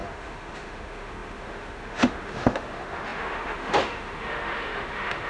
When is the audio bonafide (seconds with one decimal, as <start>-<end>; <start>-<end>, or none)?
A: none

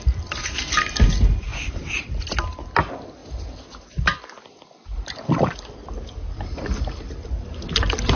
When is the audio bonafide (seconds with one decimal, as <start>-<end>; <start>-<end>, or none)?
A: 0.0-8.2

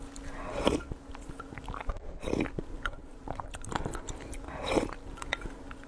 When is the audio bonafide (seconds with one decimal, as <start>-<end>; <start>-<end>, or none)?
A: 0.0-3.0; 3.9-5.9

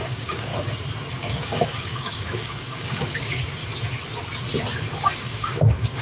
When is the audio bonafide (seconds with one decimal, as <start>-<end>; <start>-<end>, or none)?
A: 0.5-1.1; 3.6-5.2

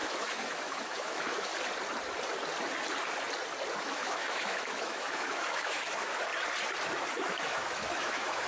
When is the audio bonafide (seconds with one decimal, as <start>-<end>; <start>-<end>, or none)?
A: 1.5-3.8; 6.3-7.0

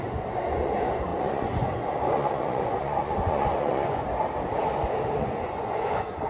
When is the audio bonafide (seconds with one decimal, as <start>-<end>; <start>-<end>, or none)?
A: 4.1-5.2

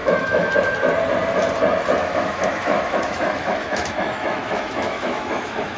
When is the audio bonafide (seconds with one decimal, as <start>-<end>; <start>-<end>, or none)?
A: 0.5-2.0

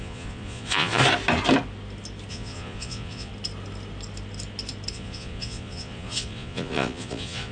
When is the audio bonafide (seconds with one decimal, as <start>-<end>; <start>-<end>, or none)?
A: 1.0-2.3; 3.3-4.9